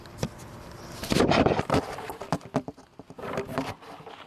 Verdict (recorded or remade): recorded